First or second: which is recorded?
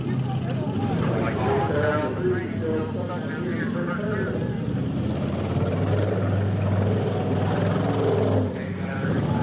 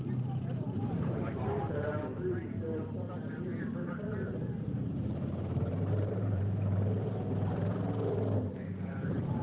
first